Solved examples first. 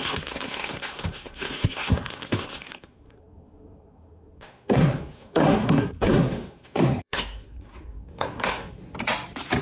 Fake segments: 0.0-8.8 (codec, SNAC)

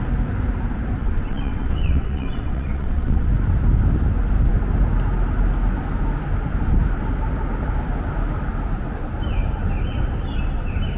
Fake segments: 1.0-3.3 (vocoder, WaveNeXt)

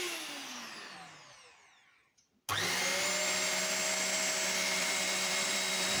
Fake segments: 4.8-6.0 (vocoder, BigVGAN v2)